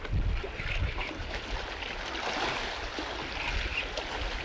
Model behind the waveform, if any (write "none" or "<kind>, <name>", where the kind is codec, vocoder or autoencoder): none